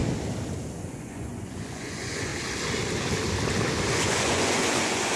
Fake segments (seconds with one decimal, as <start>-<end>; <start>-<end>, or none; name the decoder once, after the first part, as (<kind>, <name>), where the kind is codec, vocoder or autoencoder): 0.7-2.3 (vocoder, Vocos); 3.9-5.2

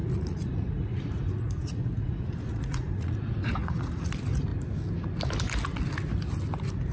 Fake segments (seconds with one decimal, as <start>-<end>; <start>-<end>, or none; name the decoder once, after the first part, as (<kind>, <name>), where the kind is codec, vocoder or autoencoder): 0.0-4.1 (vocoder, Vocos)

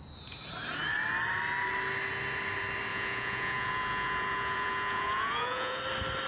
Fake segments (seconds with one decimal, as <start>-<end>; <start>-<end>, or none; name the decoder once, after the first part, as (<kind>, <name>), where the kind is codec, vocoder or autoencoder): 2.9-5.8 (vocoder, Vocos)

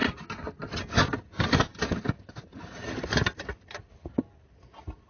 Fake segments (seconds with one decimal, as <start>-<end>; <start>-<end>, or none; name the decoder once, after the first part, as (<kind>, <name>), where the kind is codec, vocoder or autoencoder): none

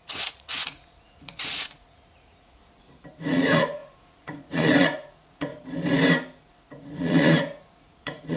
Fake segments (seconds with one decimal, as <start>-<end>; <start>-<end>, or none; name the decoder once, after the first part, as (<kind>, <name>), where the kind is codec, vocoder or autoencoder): 0.0-2.6 (vocoder, Vocos); 3.3-5.5; 6.4-8.4

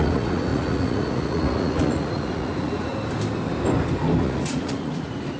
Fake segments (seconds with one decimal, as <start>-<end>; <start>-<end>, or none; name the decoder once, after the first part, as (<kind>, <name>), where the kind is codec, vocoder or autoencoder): 0.0-2.9 (vocoder, Vocos); 4.2-5.4

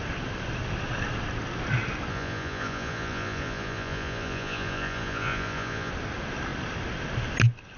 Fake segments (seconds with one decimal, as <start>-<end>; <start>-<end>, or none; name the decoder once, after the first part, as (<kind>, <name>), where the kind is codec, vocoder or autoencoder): 2.1-5.9 (vocoder, Vocos)